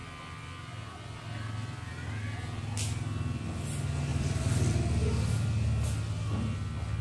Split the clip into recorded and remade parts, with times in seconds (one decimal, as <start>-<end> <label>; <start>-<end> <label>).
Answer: 0.0-1.2 remade; 1.2-4.1 recorded; 4.1-4.7 remade; 4.7-7.0 recorded

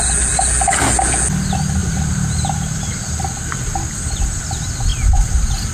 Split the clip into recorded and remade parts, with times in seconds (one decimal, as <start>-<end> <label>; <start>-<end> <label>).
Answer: 0.0-1.8 recorded; 1.8-2.9 remade; 2.9-5.7 recorded